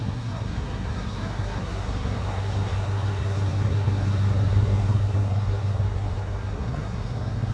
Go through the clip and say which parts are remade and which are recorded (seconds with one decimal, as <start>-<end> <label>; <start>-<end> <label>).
0.0-7.5 remade